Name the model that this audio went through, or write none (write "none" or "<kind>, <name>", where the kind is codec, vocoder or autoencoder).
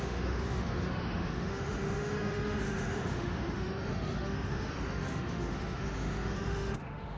autoencoder, DAC-VAE